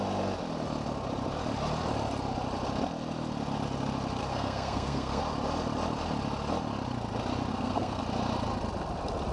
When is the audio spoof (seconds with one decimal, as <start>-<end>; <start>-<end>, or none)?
4.2-5.2; 7.5-8.0